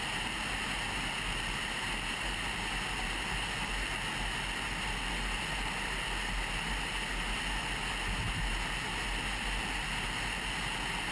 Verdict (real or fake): real